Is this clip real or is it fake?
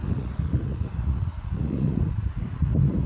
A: fake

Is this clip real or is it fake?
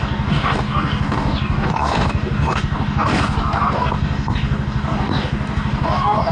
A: fake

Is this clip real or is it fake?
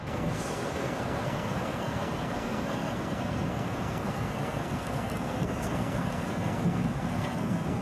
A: fake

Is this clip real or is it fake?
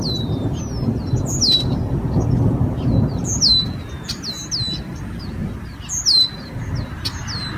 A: real